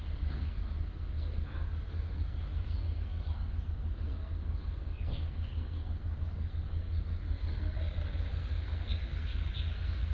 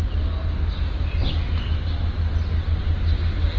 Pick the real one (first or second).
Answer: second